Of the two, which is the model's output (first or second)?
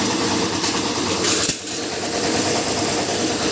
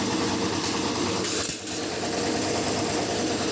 first